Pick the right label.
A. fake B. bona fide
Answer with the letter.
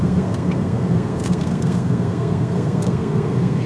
A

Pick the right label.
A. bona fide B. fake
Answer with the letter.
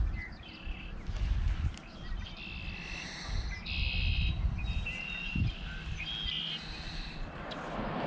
A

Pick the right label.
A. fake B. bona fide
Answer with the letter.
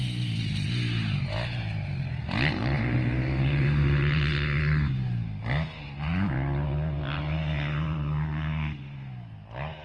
B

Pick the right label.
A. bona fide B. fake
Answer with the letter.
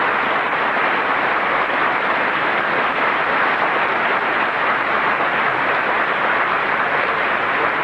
A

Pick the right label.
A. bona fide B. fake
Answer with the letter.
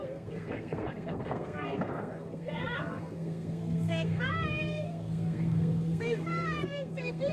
B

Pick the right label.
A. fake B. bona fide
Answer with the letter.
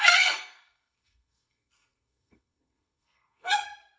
A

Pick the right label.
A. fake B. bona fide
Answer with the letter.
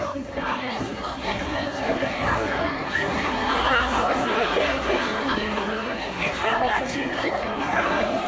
A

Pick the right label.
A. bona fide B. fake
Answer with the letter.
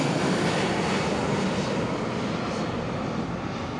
A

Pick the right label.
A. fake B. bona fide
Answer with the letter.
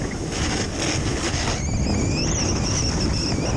B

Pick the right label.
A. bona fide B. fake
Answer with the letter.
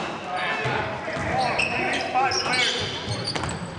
A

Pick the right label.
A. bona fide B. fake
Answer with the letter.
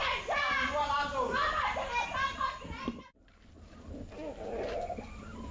A